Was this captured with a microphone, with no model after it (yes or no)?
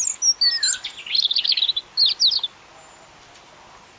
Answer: yes